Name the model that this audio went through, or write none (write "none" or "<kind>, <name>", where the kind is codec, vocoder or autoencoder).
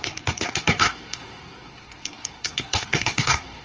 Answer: codec, SNAC